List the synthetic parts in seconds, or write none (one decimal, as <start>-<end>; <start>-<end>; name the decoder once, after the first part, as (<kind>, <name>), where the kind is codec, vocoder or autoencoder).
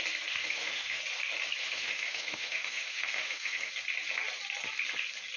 0.4-1.0 (autoencoder, DAC-VAE); 1.6-3.7